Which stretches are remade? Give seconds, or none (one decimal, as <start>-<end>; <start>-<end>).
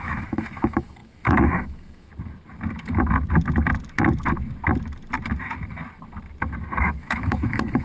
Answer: 0.0-2.1; 6.8-7.8